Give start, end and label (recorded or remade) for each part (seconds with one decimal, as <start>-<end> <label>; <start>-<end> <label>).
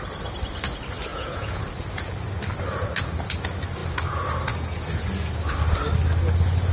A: 0.0-1.1 recorded; 1.1-1.6 remade; 1.6-6.7 recorded